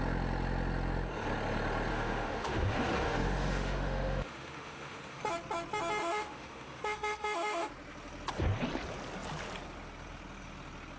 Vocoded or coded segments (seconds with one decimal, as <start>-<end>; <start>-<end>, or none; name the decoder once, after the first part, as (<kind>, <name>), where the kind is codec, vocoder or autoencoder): 1.9-5.2 (autoencoder, DAC-VAE); 6.0-7.7